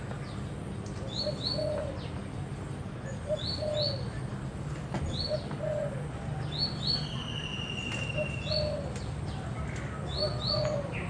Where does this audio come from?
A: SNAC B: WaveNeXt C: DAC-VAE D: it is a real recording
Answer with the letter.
D